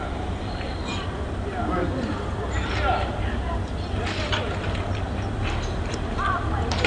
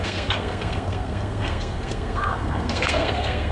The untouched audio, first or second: first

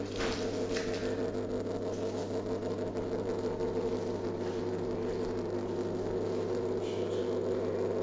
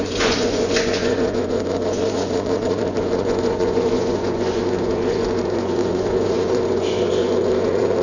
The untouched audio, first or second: first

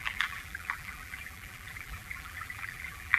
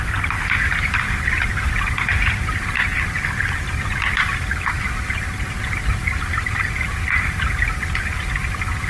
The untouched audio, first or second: second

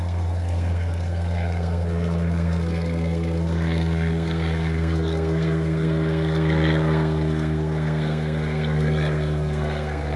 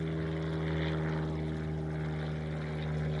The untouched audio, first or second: second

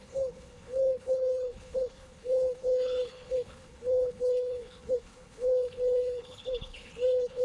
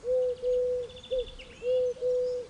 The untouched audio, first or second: second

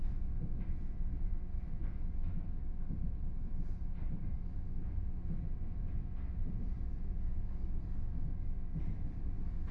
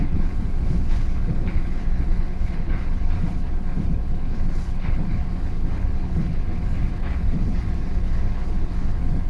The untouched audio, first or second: first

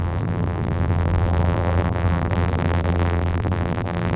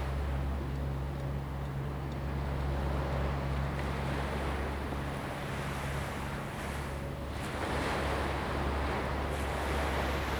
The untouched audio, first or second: second